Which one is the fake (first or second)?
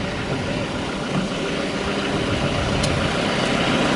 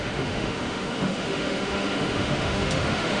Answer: second